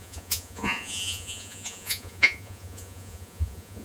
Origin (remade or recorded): remade